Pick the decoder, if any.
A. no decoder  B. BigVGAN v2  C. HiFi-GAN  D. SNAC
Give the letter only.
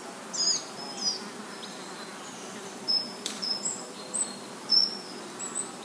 B